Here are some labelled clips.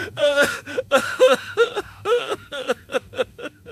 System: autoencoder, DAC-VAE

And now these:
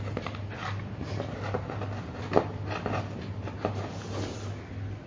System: none